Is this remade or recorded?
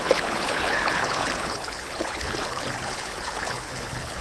remade